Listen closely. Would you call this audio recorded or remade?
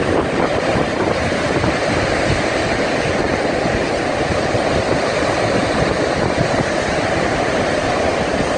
remade